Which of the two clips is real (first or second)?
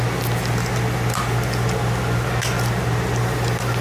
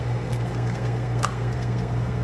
first